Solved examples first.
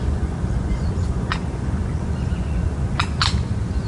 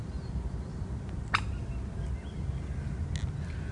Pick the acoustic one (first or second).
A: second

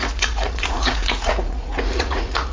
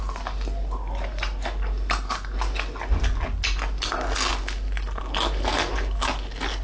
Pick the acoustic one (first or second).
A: second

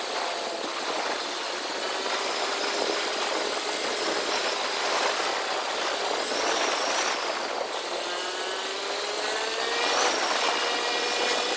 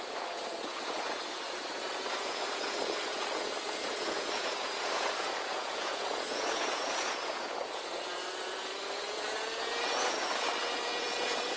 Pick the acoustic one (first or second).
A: first